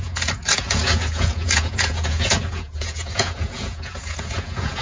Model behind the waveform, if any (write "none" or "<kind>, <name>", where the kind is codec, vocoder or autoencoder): vocoder, Vocos